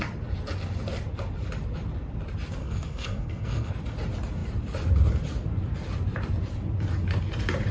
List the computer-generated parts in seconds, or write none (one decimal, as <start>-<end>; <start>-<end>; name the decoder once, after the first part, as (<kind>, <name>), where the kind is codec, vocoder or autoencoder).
2.6-3.7 (codec, SNAC)

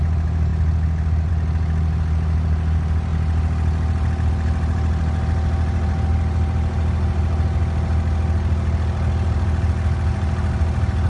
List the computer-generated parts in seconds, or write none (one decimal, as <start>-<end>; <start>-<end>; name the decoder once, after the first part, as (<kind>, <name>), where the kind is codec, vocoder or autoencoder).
none